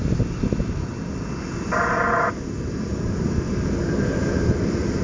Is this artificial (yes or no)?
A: no